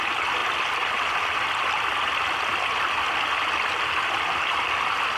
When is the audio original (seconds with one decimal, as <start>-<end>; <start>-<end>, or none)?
0.0-5.2